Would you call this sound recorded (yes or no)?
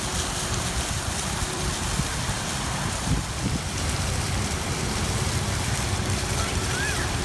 no